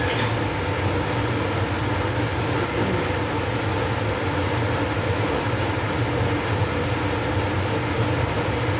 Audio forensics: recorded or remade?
recorded